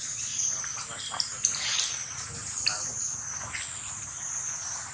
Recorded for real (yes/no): yes